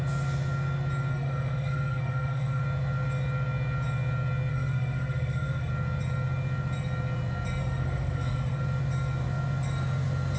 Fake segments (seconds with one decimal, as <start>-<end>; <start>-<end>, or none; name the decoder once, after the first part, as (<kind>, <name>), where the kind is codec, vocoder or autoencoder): 1.1-2.6 (codec, SNAC); 4.5-5.7; 7.6-8.6